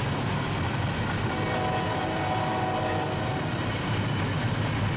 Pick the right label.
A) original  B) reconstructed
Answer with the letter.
A